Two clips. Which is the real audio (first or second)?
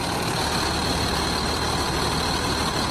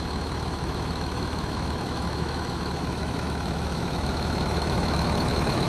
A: first